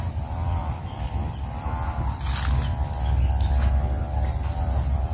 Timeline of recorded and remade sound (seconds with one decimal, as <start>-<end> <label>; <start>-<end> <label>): 0.0-5.1 recorded